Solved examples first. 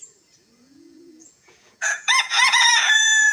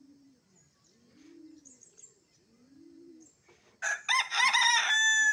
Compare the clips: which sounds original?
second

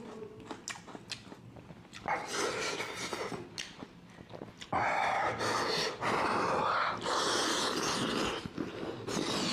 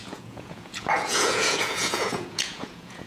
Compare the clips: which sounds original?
first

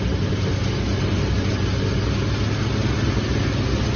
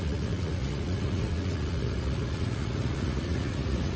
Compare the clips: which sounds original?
first